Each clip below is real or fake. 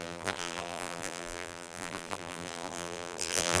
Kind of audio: fake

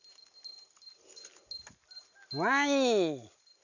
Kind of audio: real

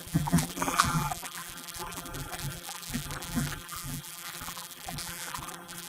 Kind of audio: fake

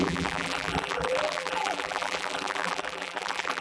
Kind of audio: fake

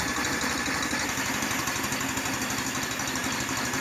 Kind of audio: fake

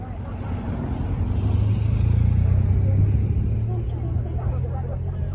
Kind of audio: real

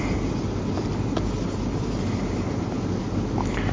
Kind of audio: real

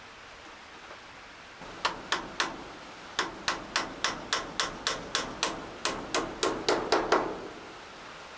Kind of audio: real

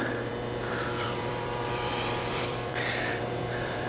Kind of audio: fake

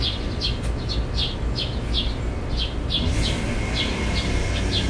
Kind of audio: real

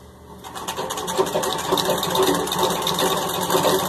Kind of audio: fake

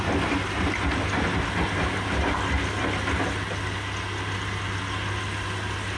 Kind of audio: real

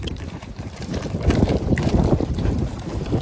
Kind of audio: fake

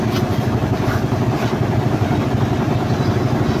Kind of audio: real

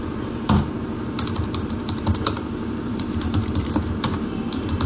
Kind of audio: fake